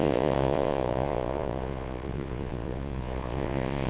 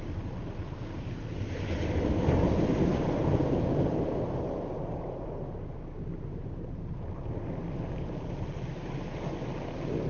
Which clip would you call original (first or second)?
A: second